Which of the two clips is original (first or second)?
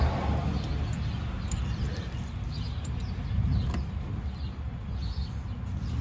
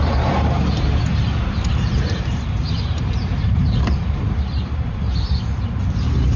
first